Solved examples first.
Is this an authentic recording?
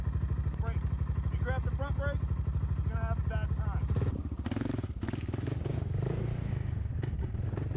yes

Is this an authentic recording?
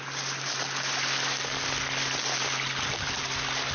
yes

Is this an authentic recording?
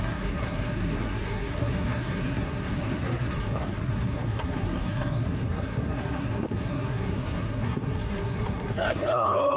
no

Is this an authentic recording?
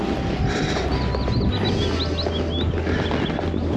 yes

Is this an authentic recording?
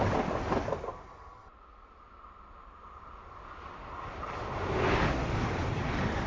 yes